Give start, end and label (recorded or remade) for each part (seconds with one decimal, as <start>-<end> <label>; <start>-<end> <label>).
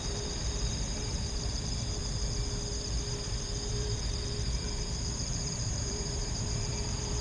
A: 0.0-2.0 remade; 2.0-3.7 recorded; 3.7-7.2 remade